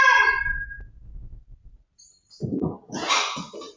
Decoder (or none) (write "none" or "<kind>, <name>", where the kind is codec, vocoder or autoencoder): vocoder, BigVGAN v2